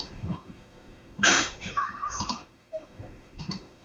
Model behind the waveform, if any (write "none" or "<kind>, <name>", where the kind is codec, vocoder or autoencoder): autoencoder, DAC-VAE